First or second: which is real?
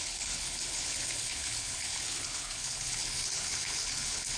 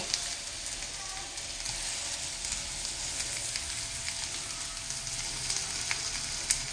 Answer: second